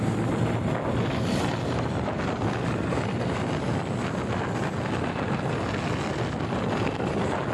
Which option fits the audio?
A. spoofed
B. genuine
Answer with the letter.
B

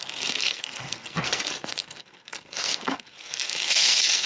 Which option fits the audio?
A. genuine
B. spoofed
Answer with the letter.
B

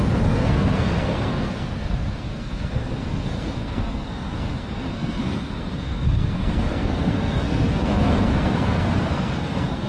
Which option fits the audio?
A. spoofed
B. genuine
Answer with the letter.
A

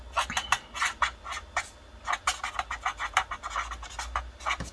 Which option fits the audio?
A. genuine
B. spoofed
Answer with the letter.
A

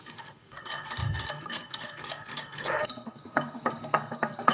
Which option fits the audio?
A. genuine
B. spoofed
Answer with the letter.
B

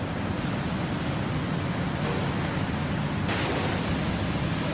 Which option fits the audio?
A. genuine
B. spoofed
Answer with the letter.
A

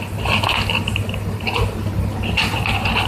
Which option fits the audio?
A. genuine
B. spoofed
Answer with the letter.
A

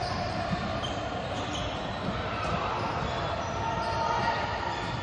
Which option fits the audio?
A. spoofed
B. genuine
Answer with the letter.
B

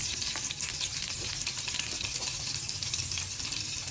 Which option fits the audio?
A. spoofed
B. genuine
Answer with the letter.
B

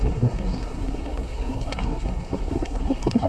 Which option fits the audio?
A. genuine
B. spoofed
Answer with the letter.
B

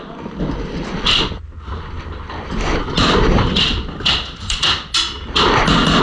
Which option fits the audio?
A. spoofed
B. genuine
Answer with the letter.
B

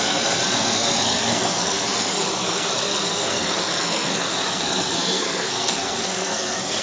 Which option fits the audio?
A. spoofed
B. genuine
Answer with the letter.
A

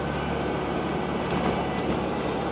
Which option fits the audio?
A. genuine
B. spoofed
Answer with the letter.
A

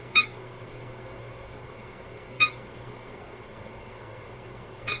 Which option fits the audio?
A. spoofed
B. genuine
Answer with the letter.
A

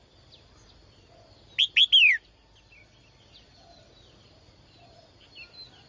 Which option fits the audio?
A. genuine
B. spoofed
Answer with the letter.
A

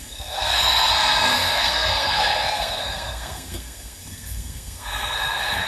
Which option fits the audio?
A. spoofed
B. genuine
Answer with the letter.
A